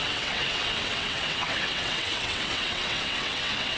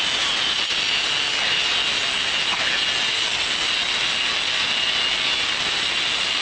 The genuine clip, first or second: second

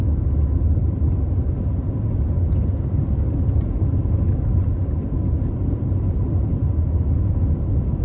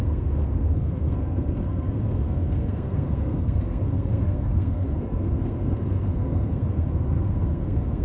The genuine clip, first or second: first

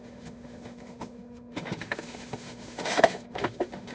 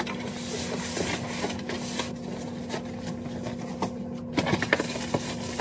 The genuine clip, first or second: second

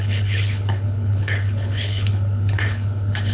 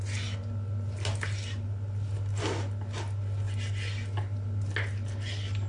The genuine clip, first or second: second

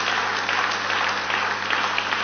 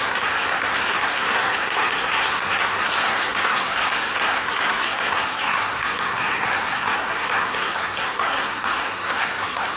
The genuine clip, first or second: first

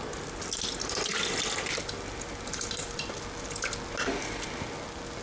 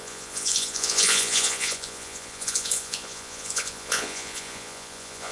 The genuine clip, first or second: first